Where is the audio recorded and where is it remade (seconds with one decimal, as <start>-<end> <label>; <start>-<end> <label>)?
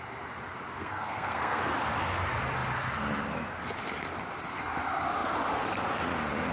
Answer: 0.0-0.8 recorded; 0.8-1.6 remade; 1.6-6.5 recorded